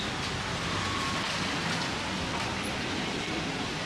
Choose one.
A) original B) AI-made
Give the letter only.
A